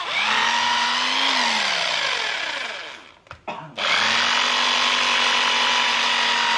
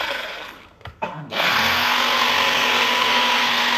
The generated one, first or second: second